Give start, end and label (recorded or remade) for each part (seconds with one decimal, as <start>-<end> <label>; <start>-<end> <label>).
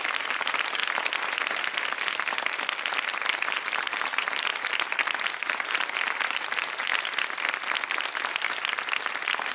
0.0-0.8 remade; 0.8-3.4 recorded; 3.4-4.5 remade; 4.5-5.6 recorded; 5.6-6.9 remade; 6.9-9.5 recorded